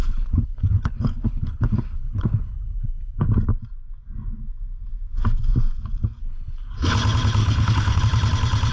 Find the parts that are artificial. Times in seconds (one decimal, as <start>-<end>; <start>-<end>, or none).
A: 0.0-3.2; 6.2-6.7; 7.4-8.0